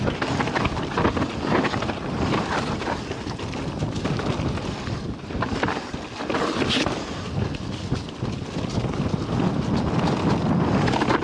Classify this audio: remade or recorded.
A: recorded